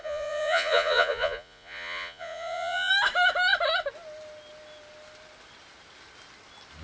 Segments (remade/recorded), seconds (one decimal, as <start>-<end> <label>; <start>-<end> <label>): 0.0-2.9 remade; 2.9-6.8 recorded